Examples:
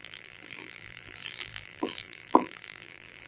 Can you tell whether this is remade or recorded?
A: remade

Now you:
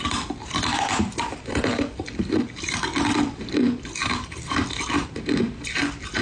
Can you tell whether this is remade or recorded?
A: remade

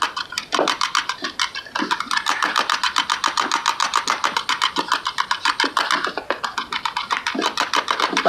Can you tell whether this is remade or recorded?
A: recorded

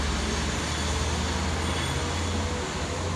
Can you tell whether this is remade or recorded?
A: recorded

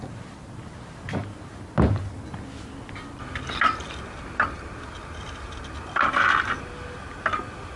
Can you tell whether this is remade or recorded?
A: recorded